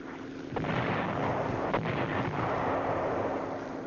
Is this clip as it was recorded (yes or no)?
yes